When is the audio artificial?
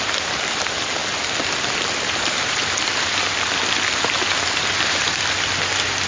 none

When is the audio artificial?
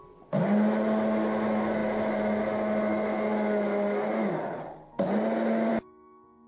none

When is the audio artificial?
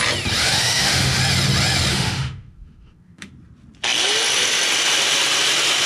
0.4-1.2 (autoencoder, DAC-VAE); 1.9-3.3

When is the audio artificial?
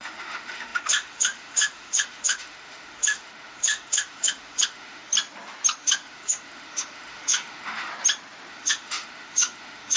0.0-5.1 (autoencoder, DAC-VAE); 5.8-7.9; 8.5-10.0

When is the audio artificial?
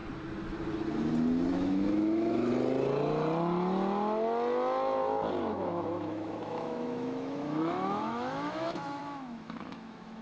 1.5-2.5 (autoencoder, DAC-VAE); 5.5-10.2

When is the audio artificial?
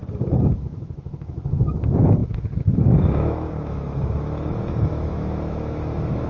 0.5-6.3 (autoencoder, DAC-VAE)